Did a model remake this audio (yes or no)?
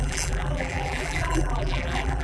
yes